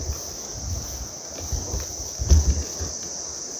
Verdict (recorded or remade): recorded